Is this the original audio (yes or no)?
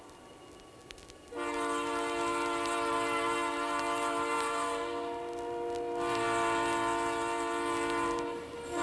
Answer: yes